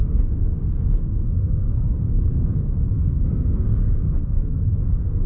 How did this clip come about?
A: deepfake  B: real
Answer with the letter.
A